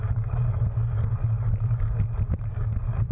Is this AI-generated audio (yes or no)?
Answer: no